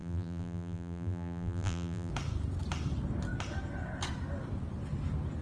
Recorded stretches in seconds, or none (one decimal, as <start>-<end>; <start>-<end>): 2.1-5.4